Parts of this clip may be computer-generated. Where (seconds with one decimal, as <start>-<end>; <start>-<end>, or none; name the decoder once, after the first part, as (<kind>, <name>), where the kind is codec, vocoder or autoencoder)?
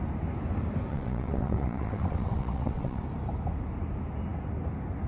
0.9-3.0 (vocoder, WaveNeXt)